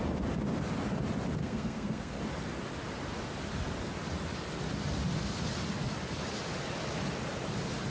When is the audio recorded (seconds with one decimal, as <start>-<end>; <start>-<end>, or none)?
0.0-1.4; 2.2-7.9